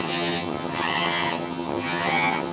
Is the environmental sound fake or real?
fake